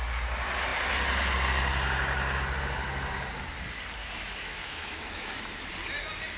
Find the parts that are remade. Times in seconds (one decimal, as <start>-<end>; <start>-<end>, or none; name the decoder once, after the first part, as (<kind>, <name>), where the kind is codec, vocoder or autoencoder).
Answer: 4.0-5.7 (autoencoder, DAC-VAE)